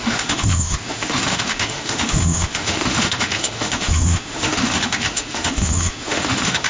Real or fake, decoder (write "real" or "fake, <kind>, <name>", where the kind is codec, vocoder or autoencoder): fake, autoencoder, DAC-VAE